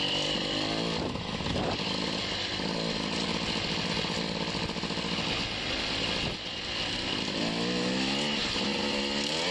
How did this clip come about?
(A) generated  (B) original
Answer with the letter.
B